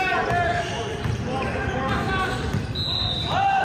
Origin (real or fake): real